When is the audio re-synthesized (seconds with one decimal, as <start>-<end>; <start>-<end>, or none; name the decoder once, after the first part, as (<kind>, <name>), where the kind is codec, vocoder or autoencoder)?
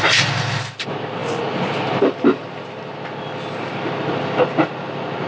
none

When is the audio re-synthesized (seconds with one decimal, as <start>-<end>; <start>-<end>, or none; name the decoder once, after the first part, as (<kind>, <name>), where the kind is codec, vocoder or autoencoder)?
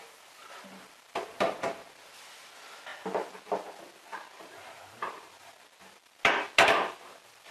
4.1-5.3 (vocoder, BigVGAN v2)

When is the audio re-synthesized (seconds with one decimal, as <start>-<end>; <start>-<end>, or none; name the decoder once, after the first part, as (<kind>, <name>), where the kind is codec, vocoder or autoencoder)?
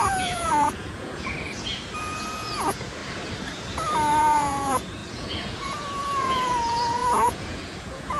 0.0-1.5 (vocoder, Vocos); 2.0-3.0; 4.2-8.2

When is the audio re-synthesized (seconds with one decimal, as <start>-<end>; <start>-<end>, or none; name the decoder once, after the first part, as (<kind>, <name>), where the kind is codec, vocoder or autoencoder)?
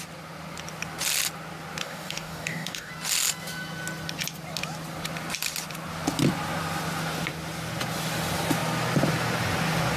1.8-2.9 (codec, DAC)